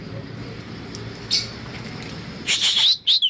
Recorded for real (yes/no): yes